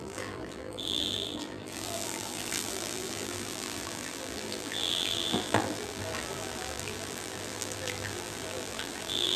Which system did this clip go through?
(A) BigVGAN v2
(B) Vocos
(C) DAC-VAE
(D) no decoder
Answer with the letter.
A